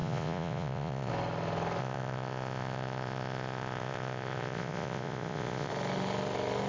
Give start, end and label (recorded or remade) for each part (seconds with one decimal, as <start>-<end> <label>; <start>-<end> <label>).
0.0-1.1 remade; 1.1-1.8 recorded; 1.8-5.7 remade; 5.7-6.7 recorded